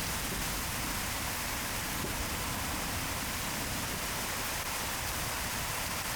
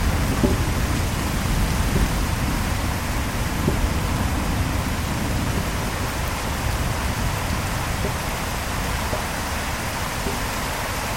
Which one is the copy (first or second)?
first